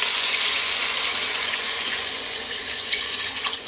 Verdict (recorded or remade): remade